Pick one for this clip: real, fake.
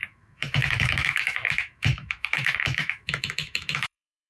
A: fake